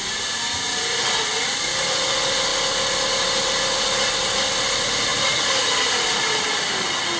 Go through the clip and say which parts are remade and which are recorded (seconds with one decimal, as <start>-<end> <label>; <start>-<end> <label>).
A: 0.0-7.2 recorded